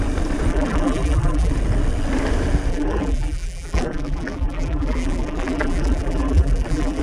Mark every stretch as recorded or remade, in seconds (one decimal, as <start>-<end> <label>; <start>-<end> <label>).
0.0-0.5 recorded; 0.5-1.5 remade; 1.5-2.7 recorded; 2.7-7.0 remade